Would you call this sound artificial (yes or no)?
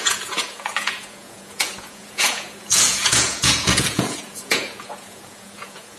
yes